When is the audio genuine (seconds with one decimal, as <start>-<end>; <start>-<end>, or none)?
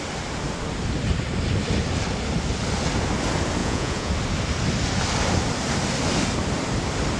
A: 0.0-3.6; 4.1-7.2